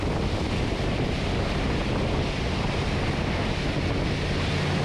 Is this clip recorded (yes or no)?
yes